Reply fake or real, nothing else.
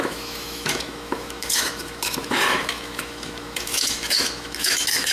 fake